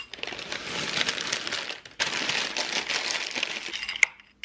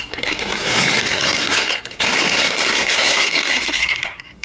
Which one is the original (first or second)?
first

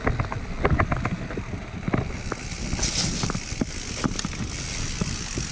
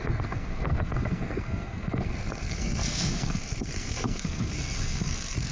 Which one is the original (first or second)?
first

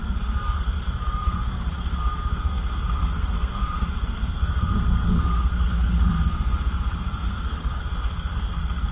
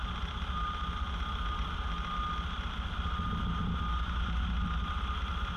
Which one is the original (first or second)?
second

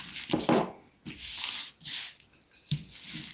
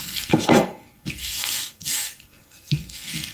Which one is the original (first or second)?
first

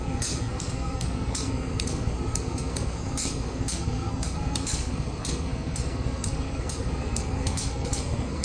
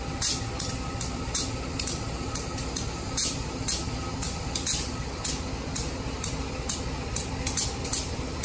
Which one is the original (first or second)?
second